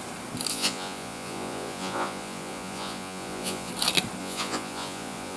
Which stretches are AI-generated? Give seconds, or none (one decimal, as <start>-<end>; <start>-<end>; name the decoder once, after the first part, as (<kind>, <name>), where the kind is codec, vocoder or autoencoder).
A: 0.5-3.7 (vocoder, Vocos); 4.2-5.4